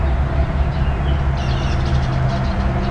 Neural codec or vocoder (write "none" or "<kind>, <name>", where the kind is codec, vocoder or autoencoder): none